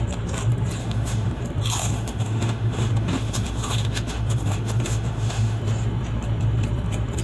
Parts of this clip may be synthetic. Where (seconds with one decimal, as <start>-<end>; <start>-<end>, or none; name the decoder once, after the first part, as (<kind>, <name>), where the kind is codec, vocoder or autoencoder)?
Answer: 0.8-1.4 (autoencoder, DAC-VAE); 1.8-5.6